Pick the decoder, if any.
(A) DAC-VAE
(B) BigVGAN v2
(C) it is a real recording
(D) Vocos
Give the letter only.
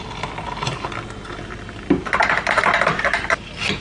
C